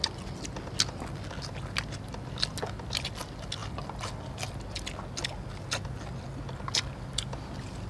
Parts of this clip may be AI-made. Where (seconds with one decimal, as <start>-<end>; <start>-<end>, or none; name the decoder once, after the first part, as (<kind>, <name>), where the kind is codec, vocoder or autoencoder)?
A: none